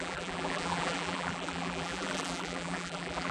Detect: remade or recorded remade